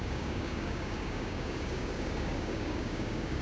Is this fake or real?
fake